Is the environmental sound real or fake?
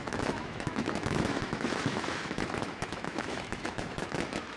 fake